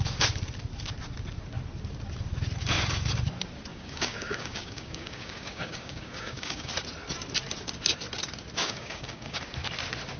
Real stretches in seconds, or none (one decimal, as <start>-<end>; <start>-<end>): 0.0-3.7; 6.7-8.6; 9.4-10.2